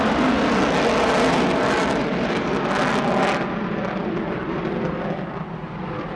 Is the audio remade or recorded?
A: recorded